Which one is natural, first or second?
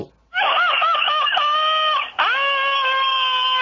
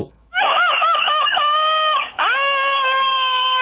first